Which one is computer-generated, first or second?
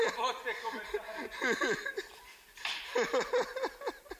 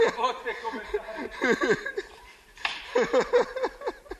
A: second